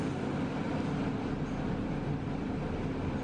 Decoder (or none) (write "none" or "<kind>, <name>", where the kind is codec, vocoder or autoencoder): none